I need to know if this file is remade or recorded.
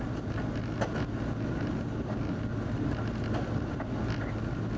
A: recorded